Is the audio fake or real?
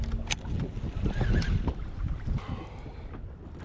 real